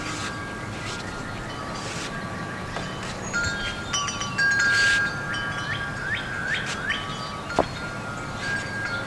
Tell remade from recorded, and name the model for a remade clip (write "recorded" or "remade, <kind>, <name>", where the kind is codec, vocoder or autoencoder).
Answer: recorded